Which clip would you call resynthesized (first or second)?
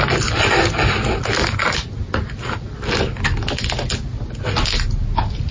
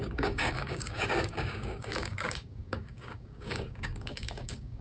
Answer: second